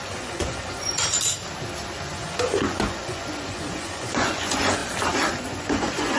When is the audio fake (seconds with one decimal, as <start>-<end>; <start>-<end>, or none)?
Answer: 0.0-1.0; 2.0-4.8; 5.3-6.2